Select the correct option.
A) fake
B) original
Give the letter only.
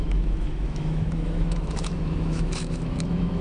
A